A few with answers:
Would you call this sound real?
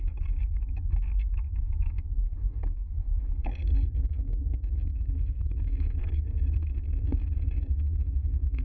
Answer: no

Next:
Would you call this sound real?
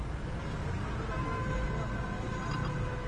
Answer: yes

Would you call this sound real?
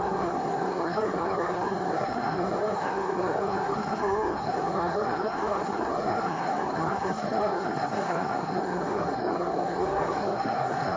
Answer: no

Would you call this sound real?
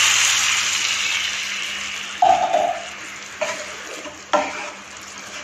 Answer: yes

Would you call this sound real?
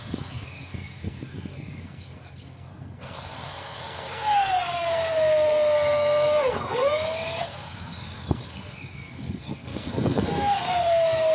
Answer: no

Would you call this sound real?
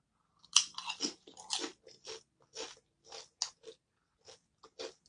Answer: yes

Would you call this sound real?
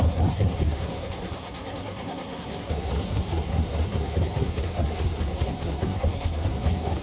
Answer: no